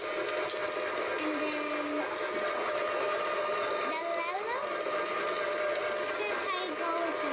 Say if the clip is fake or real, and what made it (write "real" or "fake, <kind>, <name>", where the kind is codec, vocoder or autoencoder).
real